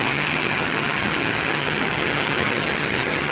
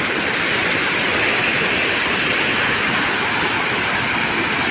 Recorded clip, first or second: second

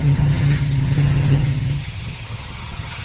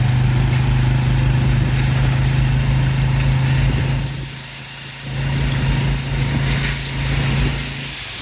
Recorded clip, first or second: second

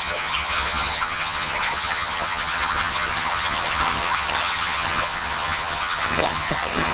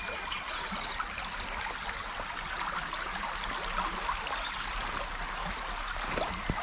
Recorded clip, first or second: second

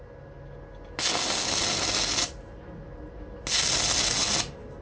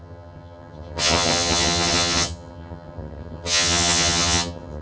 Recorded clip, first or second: first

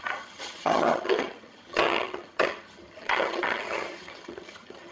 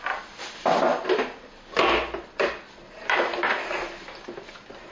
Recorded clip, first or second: second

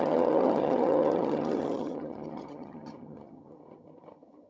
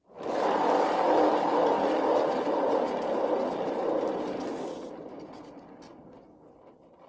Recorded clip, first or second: second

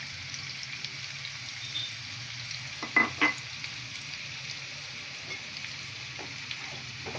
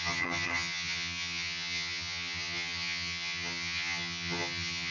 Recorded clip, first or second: first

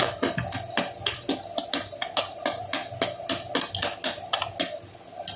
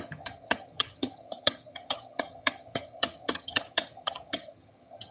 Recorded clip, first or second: first